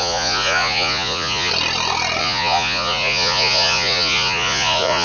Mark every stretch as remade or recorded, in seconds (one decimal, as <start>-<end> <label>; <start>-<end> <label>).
0.0-1.5 remade; 1.5-2.2 recorded; 2.2-5.0 remade